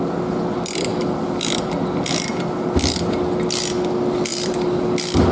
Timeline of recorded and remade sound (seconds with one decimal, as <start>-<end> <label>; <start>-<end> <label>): 0.0-0.9 recorded; 0.9-1.8 remade; 1.8-4.3 recorded; 4.3-4.8 remade; 4.8-5.3 recorded

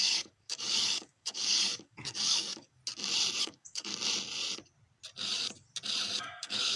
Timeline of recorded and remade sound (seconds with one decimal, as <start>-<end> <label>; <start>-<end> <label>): 0.0-2.8 remade; 2.8-3.4 recorded; 3.4-3.9 remade; 3.9-6.2 recorded; 6.2-6.8 remade

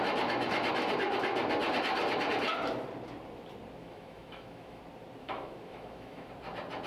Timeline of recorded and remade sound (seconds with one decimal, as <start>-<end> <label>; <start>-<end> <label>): 0.0-3.8 recorded; 3.8-4.8 remade; 4.8-5.2 recorded; 5.2-6.3 remade; 6.3-6.9 recorded